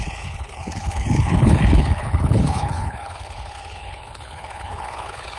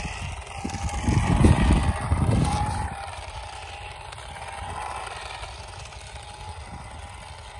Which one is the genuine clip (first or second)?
second